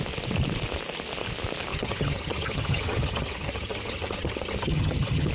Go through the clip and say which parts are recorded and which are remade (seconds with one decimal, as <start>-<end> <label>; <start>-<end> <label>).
0.0-1.7 recorded; 1.7-5.3 remade